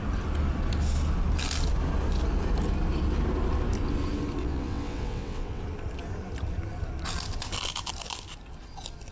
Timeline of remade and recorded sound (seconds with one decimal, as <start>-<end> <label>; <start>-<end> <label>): 0.0-4.4 recorded; 4.4-5.6 remade; 5.6-9.1 recorded